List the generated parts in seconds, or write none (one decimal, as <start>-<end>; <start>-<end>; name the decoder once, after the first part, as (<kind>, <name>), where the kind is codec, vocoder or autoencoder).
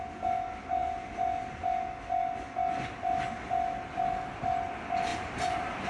5.1-5.9 (vocoder, BigVGAN v2)